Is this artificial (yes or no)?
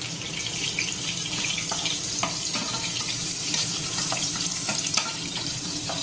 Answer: yes